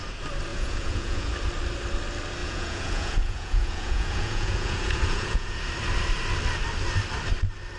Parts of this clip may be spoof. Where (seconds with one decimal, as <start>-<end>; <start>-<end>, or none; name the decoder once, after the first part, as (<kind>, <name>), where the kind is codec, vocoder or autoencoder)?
0.5-1.3 (vocoder, Vocos); 2.4-5.6